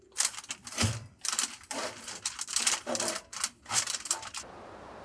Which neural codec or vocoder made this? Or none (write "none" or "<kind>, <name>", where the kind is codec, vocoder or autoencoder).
vocoder, BigVGAN v2